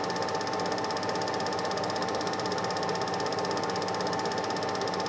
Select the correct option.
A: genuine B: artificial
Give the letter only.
A